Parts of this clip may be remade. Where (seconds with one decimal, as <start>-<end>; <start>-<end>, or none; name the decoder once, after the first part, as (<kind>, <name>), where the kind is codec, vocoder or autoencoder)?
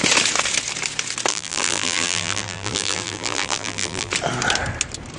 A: 1.3-4.1 (vocoder, BigVGAN v2)